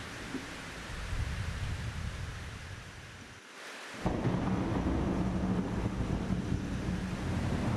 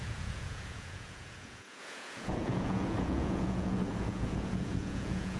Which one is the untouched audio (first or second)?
first